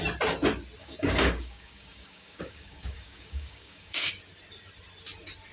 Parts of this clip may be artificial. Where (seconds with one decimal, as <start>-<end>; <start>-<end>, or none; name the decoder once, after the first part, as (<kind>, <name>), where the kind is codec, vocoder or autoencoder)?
0.8-4.1 (codec, DAC)